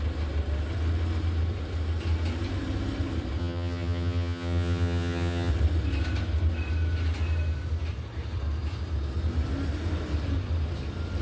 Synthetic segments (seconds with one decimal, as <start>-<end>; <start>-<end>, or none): 3.4-5.5